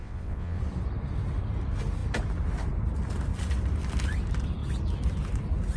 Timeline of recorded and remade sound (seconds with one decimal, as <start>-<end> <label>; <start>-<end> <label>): 0.0-0.6 remade; 0.6-5.8 recorded